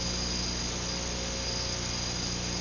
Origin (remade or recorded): recorded